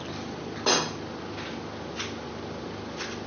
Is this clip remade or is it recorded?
recorded